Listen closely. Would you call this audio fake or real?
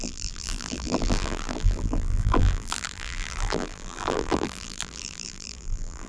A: fake